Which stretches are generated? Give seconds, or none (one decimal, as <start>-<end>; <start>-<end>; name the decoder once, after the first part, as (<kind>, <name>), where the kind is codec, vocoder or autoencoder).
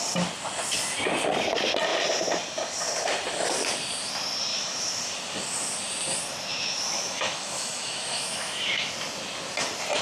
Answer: 4.5-5.0 (autoencoder, DAC-VAE); 6.5-8.9